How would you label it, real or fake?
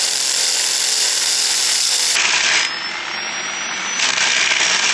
real